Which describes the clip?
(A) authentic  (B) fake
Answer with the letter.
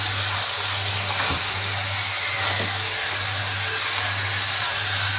A